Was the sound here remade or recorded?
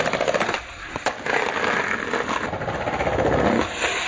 recorded